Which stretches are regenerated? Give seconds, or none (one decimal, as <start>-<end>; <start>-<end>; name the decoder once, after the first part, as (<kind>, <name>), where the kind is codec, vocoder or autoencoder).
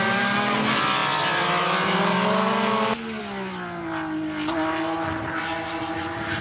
none